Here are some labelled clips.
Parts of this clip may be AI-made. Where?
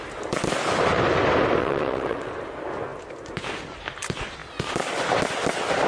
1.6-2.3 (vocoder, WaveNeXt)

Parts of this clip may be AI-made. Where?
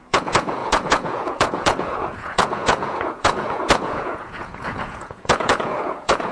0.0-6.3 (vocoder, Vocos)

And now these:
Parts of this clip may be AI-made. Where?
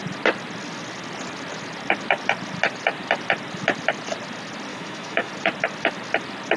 4.7-5.3 (autoencoder, DAC-VAE)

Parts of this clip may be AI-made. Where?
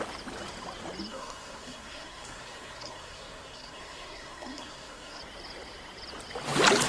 1.1-5.2 (codec, SNAC)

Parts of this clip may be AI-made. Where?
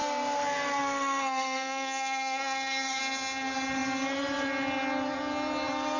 0.0-3.0 (codec, SNAC)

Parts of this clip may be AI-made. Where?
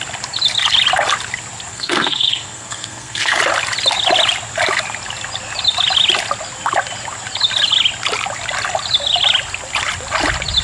1.7-3.4 (codec, SNAC)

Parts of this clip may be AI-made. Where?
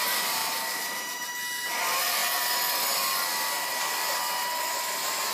0.0-2.2 (vocoder, BigVGAN v2); 3.7-5.3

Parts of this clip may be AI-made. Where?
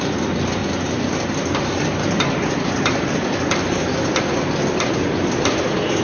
0.6-4.2 (vocoder, BigVGAN v2)